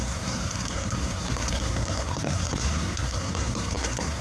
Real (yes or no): no